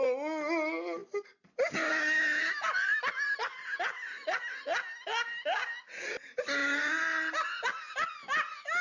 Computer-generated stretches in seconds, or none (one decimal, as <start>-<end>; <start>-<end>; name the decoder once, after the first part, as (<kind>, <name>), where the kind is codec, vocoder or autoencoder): none